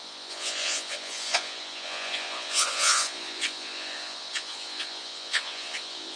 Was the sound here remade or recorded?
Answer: remade